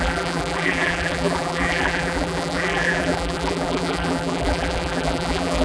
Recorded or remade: remade